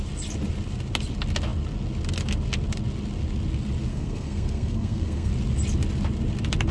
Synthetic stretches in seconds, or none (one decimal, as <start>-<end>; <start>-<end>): 3.9-5.3

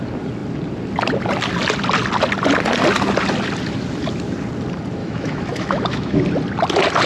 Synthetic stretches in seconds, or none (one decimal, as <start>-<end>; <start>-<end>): 5.0-6.2

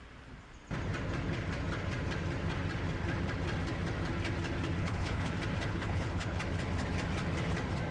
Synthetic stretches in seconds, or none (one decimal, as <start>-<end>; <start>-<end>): 4.8-5.3; 5.7-6.4

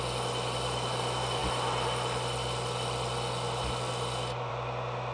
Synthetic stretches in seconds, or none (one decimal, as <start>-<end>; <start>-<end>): none

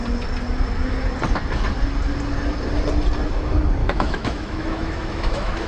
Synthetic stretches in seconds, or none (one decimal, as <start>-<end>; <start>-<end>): 3.8-5.7